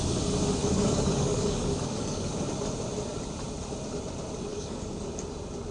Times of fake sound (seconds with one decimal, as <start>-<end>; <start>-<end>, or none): 0.6-2.3; 4.5-5.1